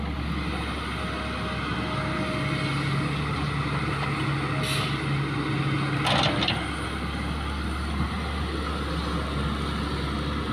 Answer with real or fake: real